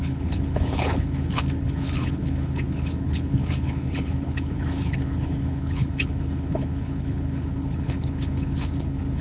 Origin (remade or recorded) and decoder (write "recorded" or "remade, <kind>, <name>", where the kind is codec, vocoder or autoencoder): remade, codec, HILCodec